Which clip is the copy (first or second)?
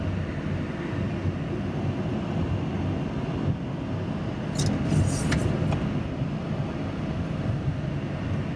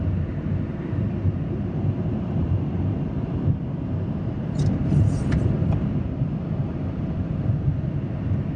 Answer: second